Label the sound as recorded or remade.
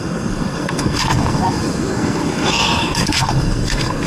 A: remade